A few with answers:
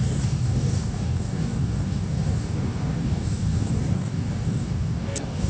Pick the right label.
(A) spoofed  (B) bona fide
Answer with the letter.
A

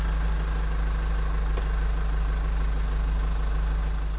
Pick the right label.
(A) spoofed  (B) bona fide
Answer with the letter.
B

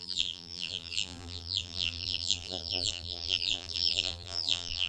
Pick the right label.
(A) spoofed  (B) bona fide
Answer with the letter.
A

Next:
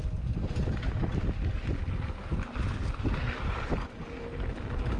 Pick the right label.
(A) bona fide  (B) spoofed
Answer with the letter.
A